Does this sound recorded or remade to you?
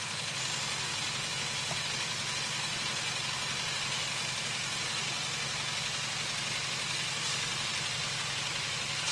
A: recorded